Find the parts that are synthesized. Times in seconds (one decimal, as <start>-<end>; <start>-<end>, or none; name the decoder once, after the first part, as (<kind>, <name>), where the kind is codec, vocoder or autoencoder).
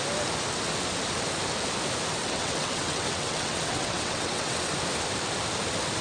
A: 2.2-4.7 (vocoder, WaveNeXt)